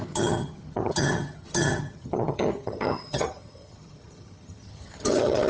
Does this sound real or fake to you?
fake